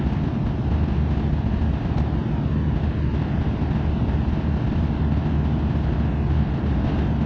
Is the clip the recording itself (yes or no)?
yes